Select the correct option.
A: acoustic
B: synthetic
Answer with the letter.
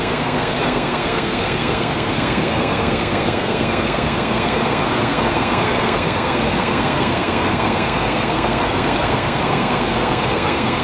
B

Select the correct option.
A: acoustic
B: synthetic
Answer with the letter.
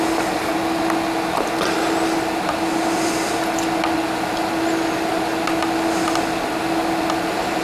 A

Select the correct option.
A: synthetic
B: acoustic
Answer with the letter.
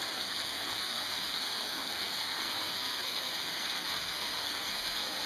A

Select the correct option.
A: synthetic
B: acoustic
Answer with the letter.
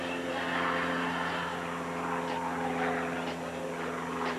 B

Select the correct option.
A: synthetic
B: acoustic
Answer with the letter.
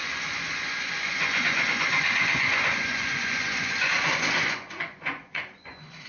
A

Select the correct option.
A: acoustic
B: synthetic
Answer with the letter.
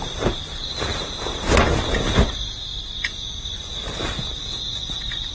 A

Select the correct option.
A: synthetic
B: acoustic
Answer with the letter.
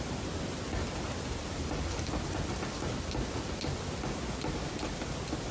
B